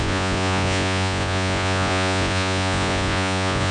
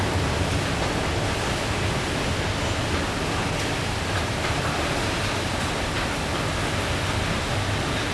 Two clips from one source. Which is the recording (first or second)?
second